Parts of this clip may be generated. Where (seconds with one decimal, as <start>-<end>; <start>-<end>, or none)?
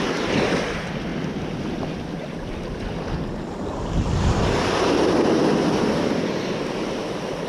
0.0-1.1; 4.9-7.5